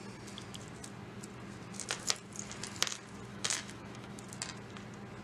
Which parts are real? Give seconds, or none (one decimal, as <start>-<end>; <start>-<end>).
0.0-3.3; 4.2-5.2

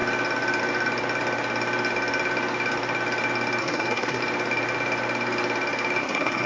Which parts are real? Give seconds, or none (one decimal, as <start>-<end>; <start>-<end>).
0.0-3.6; 4.2-6.0

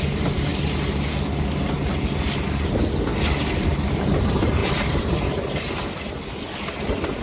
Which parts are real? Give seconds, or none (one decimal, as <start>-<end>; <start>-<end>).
0.0-7.2

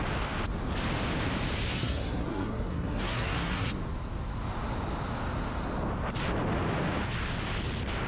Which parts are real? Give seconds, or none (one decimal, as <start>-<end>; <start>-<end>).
0.0-1.7; 3.7-8.1